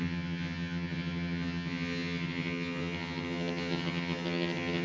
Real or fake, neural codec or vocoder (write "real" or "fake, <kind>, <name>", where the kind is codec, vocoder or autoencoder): fake, vocoder, HiFi-GAN